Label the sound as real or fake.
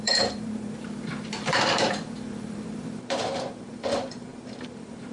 fake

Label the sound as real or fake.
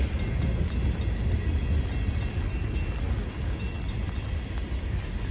real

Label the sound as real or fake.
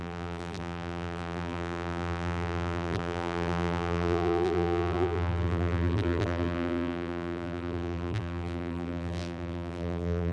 fake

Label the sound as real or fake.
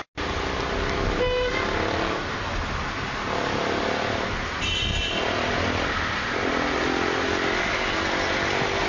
real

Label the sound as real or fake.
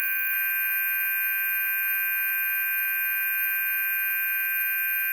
real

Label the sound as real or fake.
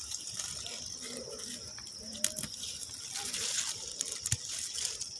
real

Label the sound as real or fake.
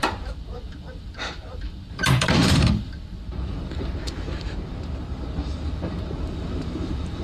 fake